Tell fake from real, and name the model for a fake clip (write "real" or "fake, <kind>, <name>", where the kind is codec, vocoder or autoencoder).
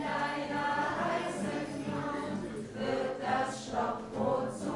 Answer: real